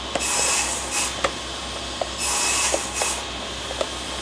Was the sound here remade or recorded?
recorded